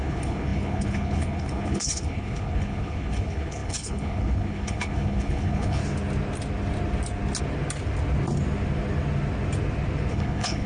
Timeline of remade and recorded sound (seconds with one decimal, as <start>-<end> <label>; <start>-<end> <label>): 0.0-5.8 remade; 5.8-10.1 recorded; 10.1-10.7 remade